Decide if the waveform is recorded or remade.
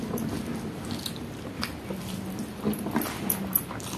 recorded